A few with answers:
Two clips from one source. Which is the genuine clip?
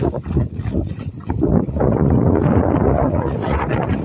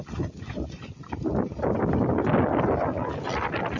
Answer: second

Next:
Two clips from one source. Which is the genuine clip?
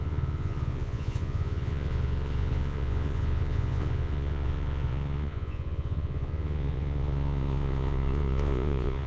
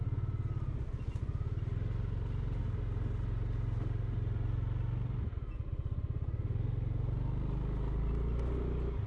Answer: second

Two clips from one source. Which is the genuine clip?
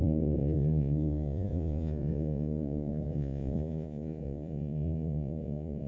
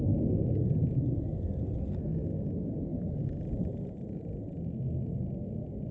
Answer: second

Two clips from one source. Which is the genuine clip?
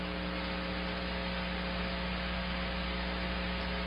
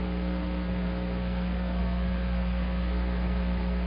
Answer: first